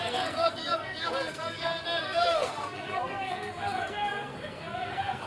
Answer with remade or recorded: remade